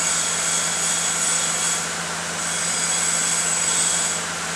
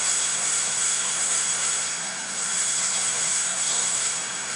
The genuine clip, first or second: first